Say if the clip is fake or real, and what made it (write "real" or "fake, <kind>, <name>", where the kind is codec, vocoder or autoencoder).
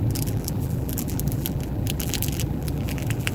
fake, vocoder, BigVGAN v2